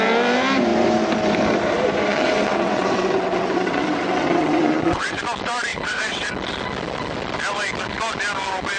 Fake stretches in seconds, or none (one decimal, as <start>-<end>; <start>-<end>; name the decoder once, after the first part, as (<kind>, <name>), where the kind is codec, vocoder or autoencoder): 2.1-5.2 (vocoder, WaveNeXt); 5.7-6.3